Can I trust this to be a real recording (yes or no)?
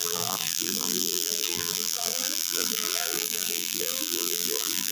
no